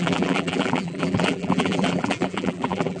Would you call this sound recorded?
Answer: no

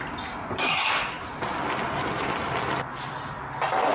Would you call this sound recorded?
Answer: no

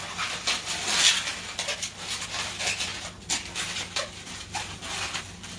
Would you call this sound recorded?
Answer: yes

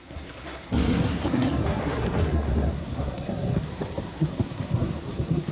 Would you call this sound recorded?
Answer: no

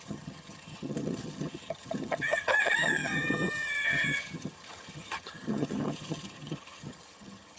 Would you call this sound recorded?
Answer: no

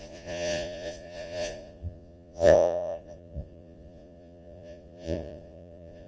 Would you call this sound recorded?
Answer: no